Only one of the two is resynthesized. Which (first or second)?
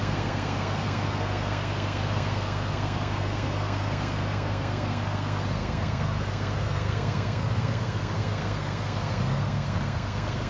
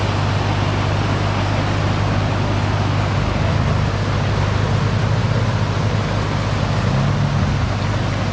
first